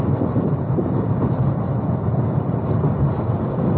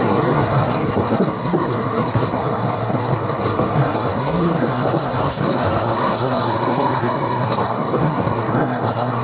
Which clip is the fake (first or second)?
second